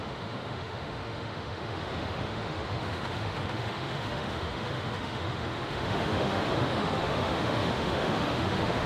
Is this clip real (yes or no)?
no